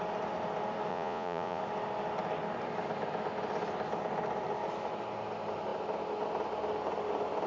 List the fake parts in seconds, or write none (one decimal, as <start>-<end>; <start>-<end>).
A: 0.9-1.6